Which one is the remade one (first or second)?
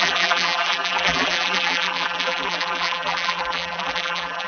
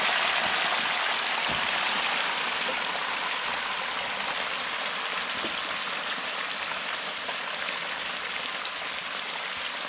first